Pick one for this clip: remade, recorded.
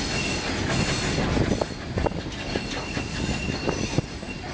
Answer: recorded